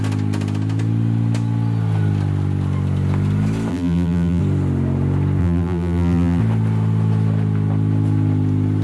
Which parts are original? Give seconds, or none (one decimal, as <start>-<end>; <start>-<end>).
0.0-3.7; 4.4-5.4; 6.4-8.8